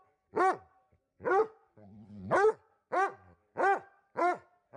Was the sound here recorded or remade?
recorded